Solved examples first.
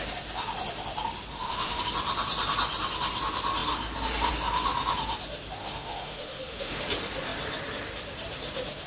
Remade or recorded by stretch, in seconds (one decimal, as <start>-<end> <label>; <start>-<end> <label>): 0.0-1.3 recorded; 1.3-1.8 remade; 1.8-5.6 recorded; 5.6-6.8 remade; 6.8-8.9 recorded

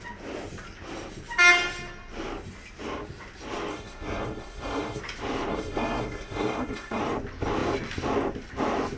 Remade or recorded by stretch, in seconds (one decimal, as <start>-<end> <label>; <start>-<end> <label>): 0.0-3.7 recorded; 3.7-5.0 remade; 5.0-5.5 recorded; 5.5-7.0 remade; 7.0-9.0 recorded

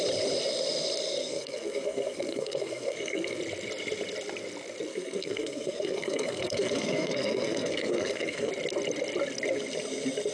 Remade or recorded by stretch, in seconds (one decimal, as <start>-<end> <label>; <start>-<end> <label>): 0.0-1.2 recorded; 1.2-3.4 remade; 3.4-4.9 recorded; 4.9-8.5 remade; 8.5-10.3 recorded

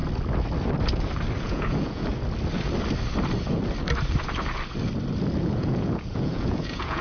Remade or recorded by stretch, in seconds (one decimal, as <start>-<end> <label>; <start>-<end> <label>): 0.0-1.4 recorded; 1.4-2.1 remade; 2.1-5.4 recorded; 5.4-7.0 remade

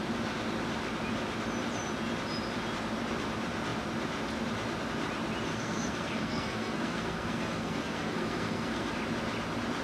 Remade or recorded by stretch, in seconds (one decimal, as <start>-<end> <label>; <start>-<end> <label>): 0.0-5.5 recorded; 5.5-8.9 remade; 8.9-9.8 recorded